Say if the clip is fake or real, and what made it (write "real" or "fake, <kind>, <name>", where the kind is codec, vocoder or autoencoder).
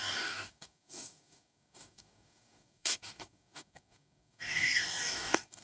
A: fake, codec, DAC